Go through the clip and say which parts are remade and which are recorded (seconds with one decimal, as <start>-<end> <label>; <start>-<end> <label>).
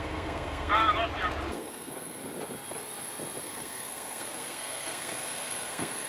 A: 0.0-0.7 remade; 0.7-1.5 recorded; 1.5-2.2 remade; 2.2-3.4 recorded; 3.4-6.1 remade